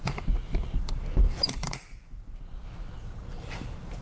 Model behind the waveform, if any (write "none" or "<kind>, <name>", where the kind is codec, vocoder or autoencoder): vocoder, BigVGAN v2